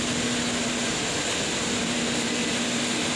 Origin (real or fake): real